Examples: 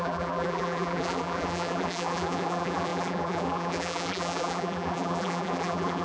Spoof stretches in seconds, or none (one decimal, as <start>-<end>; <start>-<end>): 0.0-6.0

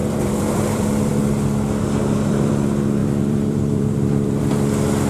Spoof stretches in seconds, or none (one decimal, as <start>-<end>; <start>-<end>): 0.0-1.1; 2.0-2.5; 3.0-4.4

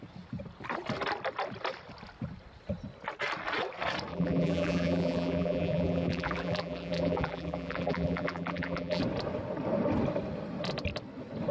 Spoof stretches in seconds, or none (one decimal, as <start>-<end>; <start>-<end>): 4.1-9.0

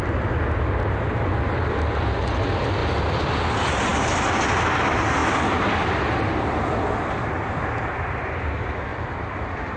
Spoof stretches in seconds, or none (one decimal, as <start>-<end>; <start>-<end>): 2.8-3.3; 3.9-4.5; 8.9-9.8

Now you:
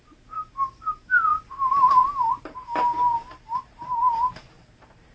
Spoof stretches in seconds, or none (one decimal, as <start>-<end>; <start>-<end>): 0.0-5.1